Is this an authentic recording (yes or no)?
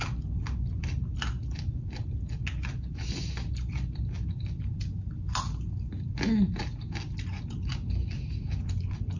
yes